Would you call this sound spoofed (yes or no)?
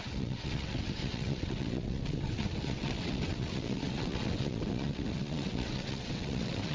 yes